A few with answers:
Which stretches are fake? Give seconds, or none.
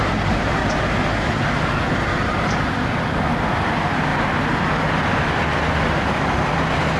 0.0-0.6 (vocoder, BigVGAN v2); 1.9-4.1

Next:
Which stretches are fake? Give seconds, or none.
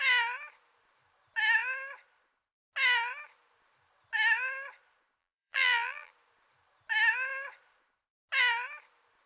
5.2-6.1 (vocoder, BigVGAN v2)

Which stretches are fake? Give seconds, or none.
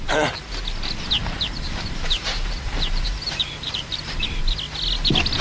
1.2-4.4 (vocoder, BigVGAN v2)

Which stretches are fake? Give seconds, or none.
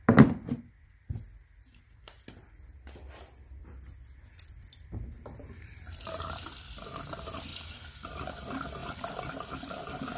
0.0-7.5 (vocoder, BigVGAN v2); 8.3-8.8; 9.3-10.2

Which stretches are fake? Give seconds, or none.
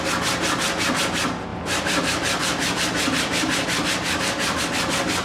1.5-4.6 (vocoder, BigVGAN v2)